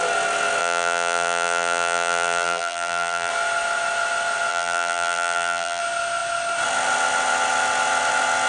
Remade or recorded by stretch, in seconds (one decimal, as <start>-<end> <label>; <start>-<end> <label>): 0.0-0.6 recorded; 0.6-3.3 remade; 3.3-4.5 recorded; 4.5-5.8 remade; 5.8-8.5 recorded